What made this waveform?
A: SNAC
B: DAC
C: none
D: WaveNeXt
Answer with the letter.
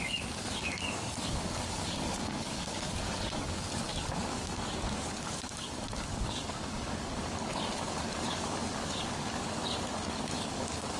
B